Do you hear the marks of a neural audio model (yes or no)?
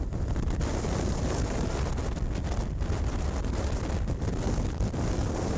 no